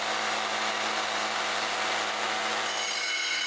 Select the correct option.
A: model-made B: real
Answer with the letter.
B